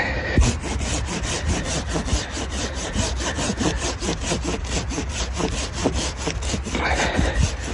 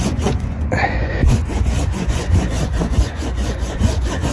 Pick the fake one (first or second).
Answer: second